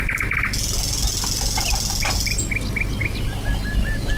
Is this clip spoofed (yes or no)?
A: no